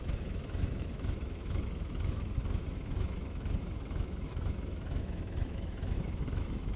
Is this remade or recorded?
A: remade